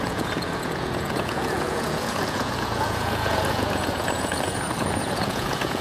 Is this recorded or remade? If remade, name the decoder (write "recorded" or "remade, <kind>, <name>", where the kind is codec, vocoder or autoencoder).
remade, vocoder, Vocos